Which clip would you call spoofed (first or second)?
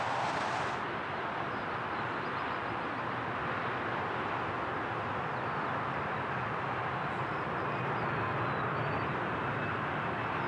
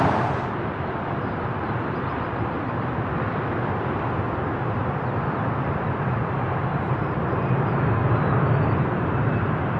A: second